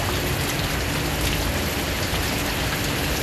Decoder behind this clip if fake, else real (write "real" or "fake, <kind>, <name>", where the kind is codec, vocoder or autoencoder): real